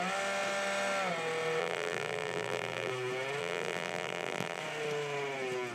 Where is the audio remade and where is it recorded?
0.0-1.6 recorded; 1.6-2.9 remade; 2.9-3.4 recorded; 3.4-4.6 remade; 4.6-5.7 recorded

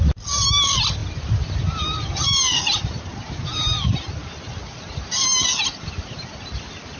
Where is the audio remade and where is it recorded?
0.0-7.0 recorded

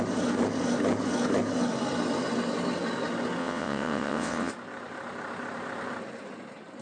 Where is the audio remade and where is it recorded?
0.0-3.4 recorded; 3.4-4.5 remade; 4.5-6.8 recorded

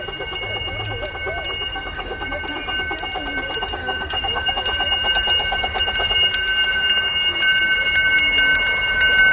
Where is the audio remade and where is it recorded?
0.0-1.7 recorded; 1.7-2.2 remade; 2.2-3.8 recorded; 3.8-4.5 remade; 4.5-9.3 recorded